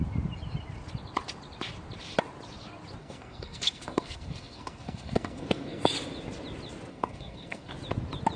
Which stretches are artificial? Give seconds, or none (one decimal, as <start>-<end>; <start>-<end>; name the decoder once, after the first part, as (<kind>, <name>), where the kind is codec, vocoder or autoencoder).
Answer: 3.0-5.9 (codec, SNAC); 6.9-7.7